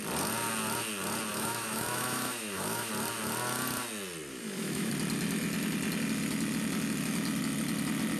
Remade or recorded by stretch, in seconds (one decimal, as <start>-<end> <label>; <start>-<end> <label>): 0.0-1.3 recorded; 1.3-2.9 remade; 2.9-4.3 recorded; 4.3-4.9 remade; 4.9-8.2 recorded